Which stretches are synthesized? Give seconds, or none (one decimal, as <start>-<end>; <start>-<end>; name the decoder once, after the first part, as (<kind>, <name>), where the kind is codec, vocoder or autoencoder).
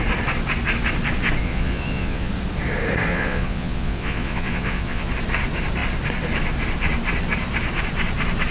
1.4-2.3 (vocoder, Vocos); 3.1-5.1